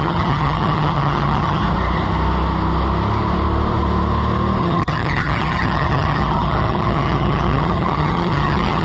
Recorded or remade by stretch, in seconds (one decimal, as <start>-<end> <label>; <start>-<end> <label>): 0.0-1.6 remade; 1.6-4.6 recorded; 4.6-8.8 remade